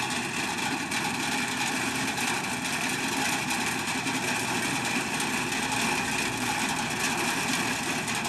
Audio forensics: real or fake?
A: real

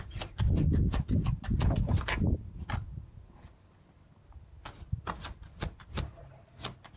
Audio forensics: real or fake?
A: real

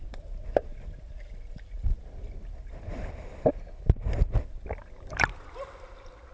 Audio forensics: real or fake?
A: real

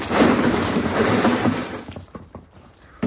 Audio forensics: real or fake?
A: fake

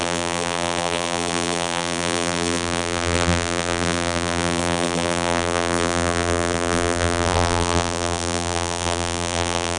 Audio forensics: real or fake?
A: fake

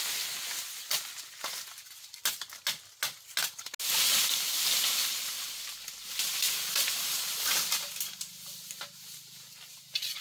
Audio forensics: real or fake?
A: real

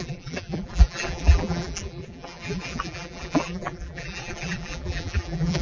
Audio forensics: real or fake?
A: fake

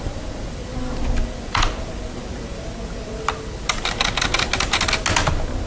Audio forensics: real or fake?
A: real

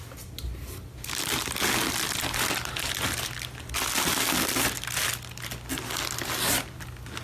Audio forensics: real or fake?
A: real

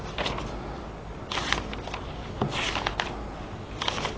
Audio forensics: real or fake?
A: real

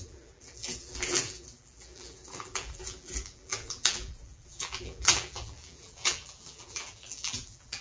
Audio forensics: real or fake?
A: fake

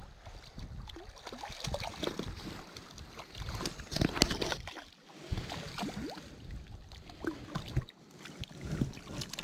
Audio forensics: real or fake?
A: real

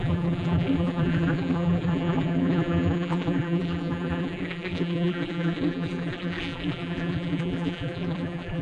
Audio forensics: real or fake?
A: fake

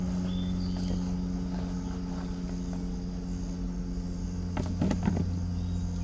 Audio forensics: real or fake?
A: real